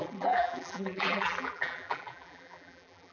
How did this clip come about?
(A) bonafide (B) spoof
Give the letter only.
B